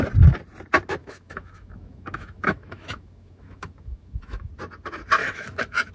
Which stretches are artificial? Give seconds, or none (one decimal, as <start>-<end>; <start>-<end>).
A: 1.0-4.5; 5.2-5.9